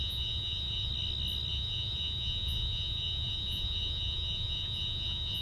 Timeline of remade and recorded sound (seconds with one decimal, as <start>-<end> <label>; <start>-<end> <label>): 0.0-0.9 remade; 0.9-1.5 recorded; 1.5-5.4 remade